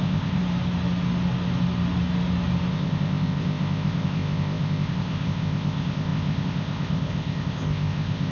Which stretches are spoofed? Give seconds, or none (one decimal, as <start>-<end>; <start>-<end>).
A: 0.0-0.4; 2.7-8.3